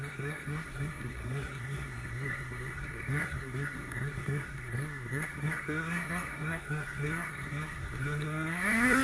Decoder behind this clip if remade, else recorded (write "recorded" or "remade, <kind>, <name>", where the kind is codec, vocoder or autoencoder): remade, codec, SNAC